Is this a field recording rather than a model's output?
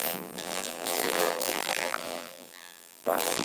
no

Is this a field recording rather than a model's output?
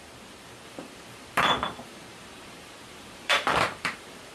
no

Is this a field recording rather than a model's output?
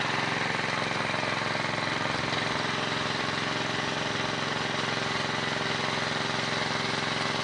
yes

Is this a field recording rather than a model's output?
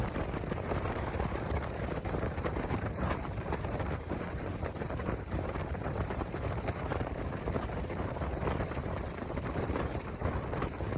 no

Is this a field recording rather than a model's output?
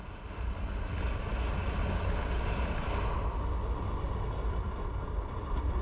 yes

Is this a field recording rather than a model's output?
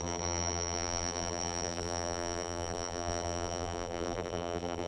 no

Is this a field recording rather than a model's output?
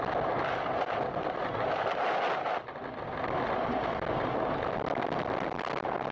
yes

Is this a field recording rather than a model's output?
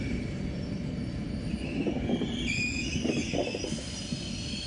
no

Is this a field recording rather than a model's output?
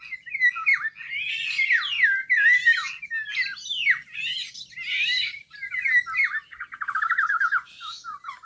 yes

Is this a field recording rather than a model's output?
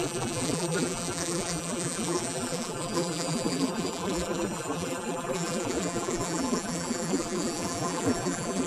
no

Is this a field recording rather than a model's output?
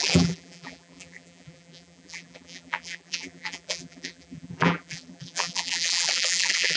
no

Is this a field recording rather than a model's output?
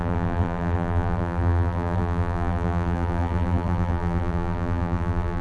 no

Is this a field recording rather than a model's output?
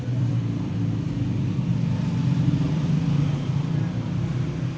no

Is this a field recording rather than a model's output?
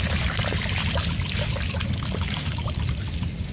no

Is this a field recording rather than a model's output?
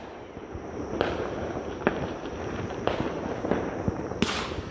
no